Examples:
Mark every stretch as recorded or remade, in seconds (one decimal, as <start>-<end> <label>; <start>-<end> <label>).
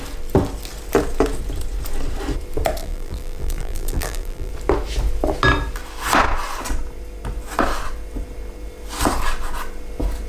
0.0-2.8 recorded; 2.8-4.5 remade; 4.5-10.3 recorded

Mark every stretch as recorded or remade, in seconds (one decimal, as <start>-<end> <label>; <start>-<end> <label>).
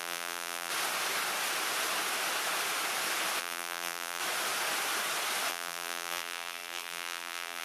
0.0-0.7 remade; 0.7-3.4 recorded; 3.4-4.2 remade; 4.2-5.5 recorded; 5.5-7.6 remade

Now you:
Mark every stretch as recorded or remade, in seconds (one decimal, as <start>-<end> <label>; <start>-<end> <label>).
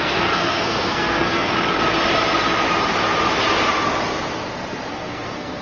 0.0-1.5 remade; 1.5-4.9 recorded; 4.9-5.6 remade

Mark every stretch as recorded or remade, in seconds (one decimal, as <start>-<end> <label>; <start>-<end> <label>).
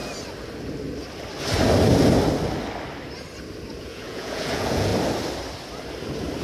0.0-3.8 recorded; 3.8-4.9 remade; 4.9-6.4 recorded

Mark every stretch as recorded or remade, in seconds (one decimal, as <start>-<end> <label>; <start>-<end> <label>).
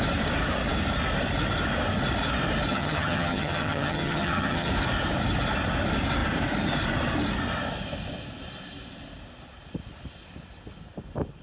0.0-2.7 recorded; 2.7-4.7 remade; 4.7-11.4 recorded